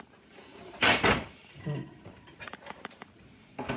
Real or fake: fake